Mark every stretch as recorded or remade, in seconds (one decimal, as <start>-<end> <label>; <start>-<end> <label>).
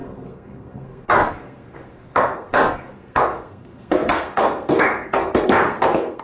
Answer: 0.0-6.2 remade